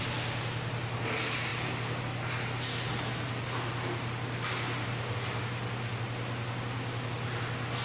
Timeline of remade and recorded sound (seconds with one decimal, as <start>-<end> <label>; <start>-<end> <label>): 0.0-1.5 recorded; 1.5-2.0 remade; 2.0-7.8 recorded